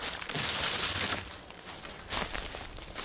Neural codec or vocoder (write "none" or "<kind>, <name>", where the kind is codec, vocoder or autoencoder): none